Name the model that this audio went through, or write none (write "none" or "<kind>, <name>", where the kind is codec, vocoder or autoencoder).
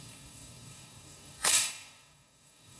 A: codec, DAC